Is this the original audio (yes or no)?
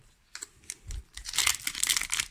yes